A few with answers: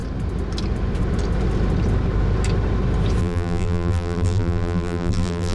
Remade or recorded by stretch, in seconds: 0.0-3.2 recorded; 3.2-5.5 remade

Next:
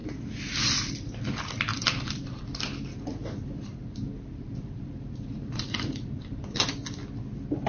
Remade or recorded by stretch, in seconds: 0.0-1.1 remade; 1.1-1.7 recorded; 1.7-2.4 remade; 2.4-3.2 recorded; 3.2-6.4 remade; 6.4-7.7 recorded

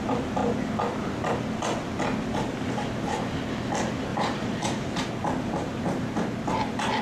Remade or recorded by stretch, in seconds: 0.0-4.1 recorded; 4.1-5.1 remade; 5.1-7.0 recorded

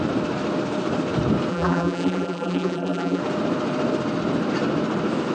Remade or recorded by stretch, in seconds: 0.0-1.5 recorded; 1.5-3.2 remade; 3.2-5.3 recorded